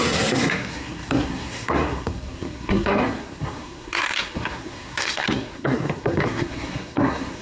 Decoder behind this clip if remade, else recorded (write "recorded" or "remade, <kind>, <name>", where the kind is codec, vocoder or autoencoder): remade, codec, SNAC